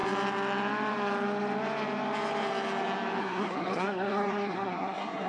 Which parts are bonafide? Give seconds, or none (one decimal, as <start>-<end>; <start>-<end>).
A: 0.0-3.2

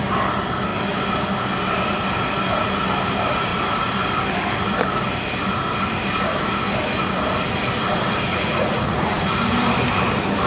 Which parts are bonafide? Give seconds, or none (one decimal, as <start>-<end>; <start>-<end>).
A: 0.0-8.3; 9.3-10.5

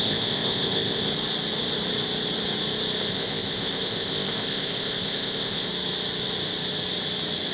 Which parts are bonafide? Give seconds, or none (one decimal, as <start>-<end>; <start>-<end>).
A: 1.1-3.1; 5.7-7.5

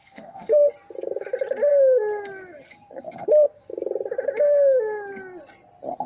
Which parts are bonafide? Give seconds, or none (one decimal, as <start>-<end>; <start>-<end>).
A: 0.7-6.1

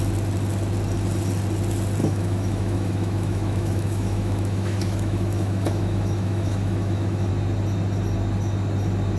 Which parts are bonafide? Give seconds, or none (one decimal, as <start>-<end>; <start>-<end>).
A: 0.0-2.0; 7.3-9.2

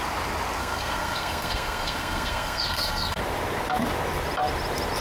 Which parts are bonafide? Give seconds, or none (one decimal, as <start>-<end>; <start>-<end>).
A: 0.0-0.6; 3.2-5.0

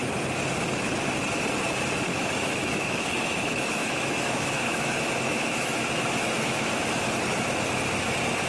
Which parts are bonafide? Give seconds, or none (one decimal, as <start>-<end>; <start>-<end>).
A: 0.0-2.1; 7.1-8.5